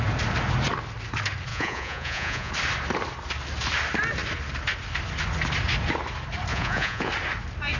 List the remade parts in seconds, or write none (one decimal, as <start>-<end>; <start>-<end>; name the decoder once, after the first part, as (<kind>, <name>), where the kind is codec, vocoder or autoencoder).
1.5-2.5 (vocoder, Vocos); 6.5-7.1